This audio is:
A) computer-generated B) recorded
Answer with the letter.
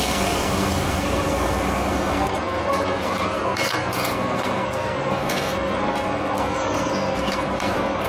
A